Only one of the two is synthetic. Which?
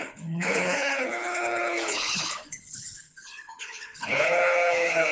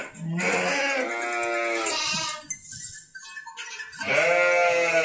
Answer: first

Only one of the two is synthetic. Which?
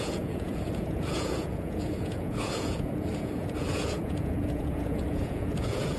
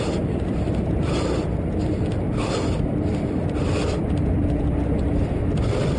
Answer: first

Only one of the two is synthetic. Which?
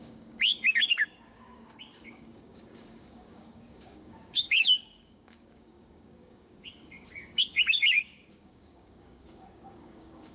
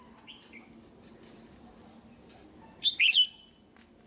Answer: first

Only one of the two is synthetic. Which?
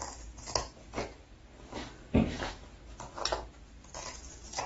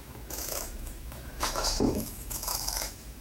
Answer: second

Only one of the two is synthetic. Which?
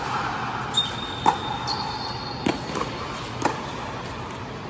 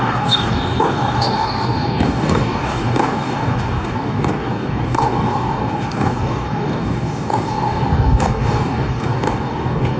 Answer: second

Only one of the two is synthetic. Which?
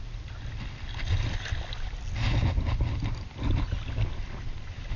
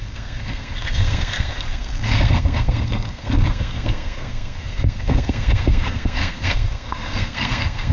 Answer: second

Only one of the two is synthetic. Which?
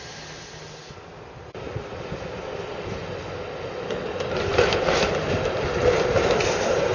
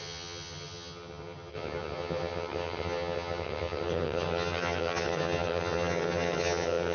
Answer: second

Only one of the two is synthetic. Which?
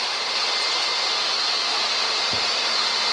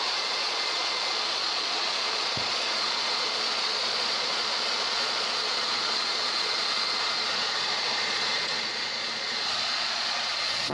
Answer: second